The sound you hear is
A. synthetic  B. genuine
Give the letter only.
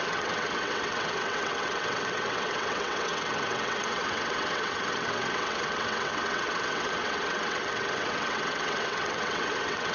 A